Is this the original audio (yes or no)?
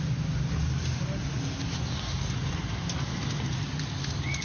yes